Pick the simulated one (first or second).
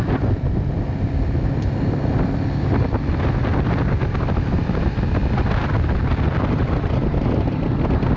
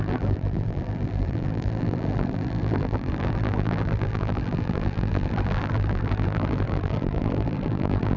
second